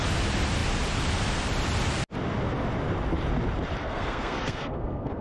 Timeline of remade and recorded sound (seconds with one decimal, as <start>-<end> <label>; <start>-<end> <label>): 0.0-3.8 recorded; 3.8-5.2 remade